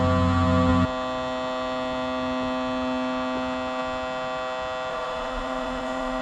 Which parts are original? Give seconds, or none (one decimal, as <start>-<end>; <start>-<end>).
0.0-4.9